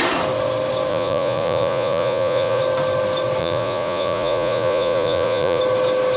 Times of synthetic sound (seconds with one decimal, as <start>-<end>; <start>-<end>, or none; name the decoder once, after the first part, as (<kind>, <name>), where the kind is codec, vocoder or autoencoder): 0.9-2.6 (vocoder, Vocos); 3.4-5.6